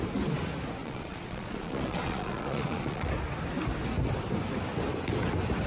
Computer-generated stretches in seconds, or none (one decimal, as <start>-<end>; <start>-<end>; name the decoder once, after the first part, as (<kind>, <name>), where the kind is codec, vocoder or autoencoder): 0.8-3.1 (vocoder, Vocos)

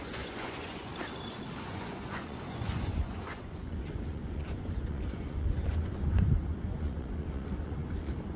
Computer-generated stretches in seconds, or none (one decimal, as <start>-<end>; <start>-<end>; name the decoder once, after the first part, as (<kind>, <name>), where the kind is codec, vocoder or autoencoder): 0.0-0.9 (vocoder, Vocos); 1.6-8.4

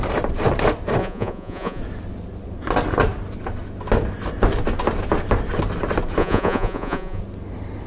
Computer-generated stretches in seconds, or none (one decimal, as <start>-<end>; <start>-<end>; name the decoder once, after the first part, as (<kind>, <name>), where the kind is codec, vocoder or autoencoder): 1.0-1.8 (vocoder, Vocos); 6.2-7.2

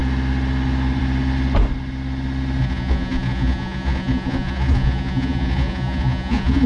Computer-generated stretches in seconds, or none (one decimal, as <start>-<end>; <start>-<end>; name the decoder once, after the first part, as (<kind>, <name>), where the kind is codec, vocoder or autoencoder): 2.6-6.7 (vocoder, Vocos)